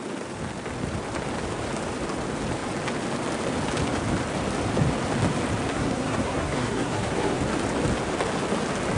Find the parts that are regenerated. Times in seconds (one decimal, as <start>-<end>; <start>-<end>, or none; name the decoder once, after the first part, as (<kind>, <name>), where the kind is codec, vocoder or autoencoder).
5.7-7.4 (codec, SNAC)